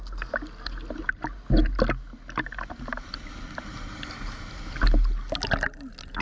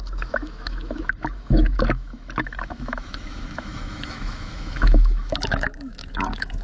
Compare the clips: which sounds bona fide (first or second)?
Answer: first